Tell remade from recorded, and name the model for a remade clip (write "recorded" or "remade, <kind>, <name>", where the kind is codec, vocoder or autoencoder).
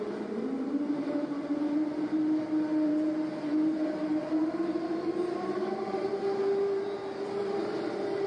remade, vocoder, BigVGAN v2